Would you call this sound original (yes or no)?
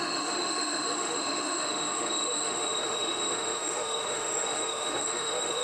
no